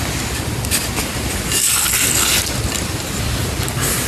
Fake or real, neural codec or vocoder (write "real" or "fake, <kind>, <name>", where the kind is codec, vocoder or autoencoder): real